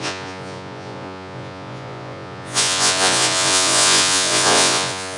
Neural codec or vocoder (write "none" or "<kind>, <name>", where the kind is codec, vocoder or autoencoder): vocoder, Vocos